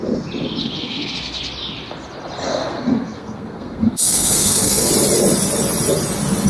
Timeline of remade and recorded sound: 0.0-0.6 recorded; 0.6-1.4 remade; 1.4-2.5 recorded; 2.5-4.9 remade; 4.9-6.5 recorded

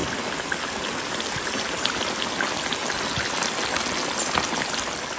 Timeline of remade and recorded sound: 0.0-5.2 recorded

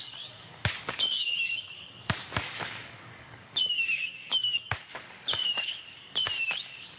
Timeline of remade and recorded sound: 0.0-7.0 remade

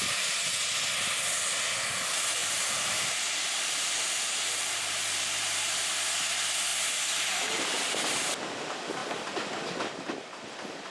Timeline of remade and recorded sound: 0.0-2.4 recorded; 2.4-5.7 remade; 5.7-10.9 recorded

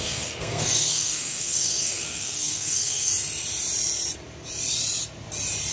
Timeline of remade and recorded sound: 0.0-3.1 remade; 3.1-5.7 recorded

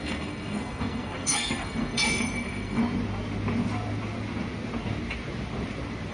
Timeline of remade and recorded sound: 0.0-2.8 remade; 2.8-6.1 recorded

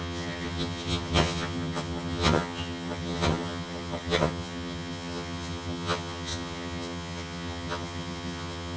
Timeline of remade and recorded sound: 0.0-8.8 remade